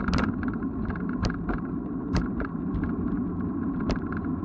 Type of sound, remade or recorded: remade